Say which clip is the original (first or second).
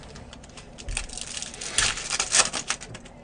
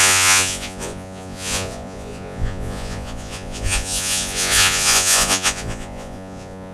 first